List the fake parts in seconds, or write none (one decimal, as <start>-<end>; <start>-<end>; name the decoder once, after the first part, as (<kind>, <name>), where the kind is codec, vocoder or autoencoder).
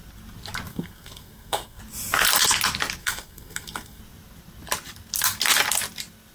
0.7-1.8 (codec, SNAC); 3.0-4.0